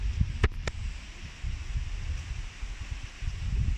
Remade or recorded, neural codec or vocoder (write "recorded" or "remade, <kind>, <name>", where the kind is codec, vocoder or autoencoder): recorded